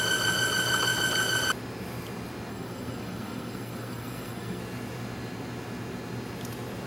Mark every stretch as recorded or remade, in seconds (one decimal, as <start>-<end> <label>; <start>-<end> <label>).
0.0-2.5 recorded; 2.5-4.6 remade; 4.6-6.9 recorded